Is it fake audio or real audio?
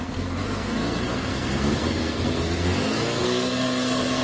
fake